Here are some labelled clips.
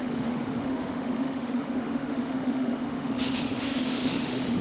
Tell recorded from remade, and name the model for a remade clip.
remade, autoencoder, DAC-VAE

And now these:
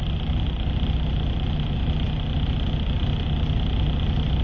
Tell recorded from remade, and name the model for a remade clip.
recorded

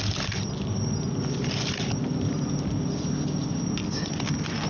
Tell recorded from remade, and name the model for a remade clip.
recorded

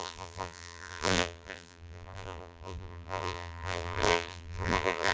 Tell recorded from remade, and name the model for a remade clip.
remade, vocoder, BigVGAN v2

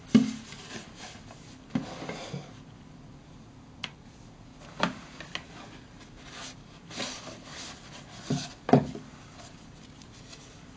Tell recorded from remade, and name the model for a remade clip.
recorded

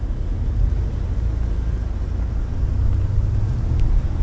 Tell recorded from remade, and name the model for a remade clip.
recorded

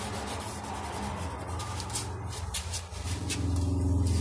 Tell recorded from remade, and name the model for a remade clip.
recorded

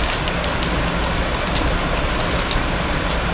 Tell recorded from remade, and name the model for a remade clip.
recorded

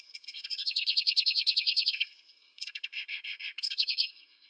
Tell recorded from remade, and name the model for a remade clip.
remade, codec, SNAC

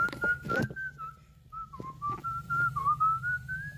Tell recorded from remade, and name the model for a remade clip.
recorded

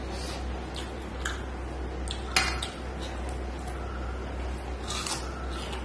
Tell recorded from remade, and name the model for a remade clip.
recorded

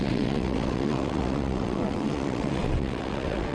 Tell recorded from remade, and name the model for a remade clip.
remade, vocoder, WaveNeXt